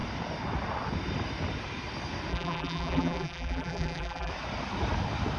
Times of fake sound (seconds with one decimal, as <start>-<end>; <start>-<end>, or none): 2.3-4.3